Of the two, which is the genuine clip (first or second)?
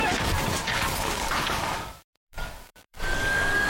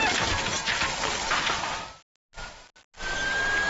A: second